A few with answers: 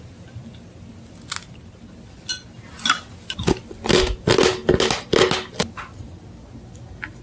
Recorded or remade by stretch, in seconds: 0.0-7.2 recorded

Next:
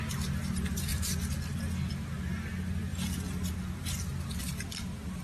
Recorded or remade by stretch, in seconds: 0.0-5.2 recorded

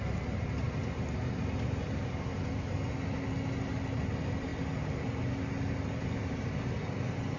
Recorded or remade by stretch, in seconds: 0.0-7.4 recorded

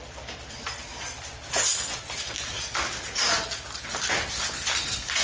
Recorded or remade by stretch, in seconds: 0.0-5.2 recorded

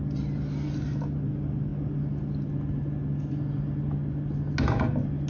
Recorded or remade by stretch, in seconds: 0.0-5.3 recorded

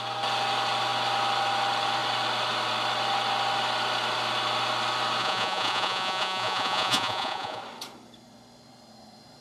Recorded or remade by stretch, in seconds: 0.0-5.2 recorded; 5.2-7.6 remade; 7.6-9.4 recorded

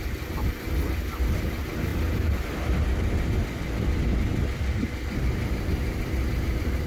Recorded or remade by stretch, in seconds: 0.0-6.9 recorded

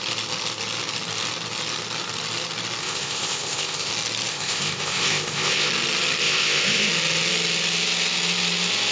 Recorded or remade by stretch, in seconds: 0.0-2.8 recorded; 2.8-3.9 remade; 3.9-4.3 recorded; 4.3-5.7 remade; 5.7-6.2 recorded; 6.2-6.9 remade; 6.9-8.9 recorded